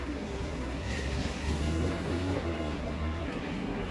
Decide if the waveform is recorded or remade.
remade